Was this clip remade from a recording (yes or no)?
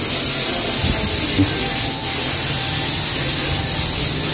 no